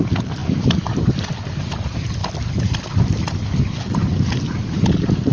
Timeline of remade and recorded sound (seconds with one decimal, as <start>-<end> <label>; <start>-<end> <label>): 0.0-0.4 recorded; 0.4-1.6 remade; 1.6-2.2 recorded; 2.2-3.8 remade; 3.8-5.3 recorded